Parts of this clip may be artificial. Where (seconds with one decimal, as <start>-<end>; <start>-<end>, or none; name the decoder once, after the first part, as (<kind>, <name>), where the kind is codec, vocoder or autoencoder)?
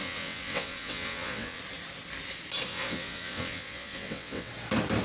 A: 0.0-1.6 (vocoder, WaveNeXt); 2.7-4.5